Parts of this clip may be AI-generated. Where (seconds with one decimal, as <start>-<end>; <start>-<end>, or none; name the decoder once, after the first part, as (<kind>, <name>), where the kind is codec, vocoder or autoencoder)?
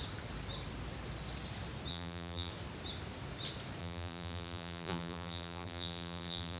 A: 1.9-2.5 (vocoder, BigVGAN v2); 3.8-6.6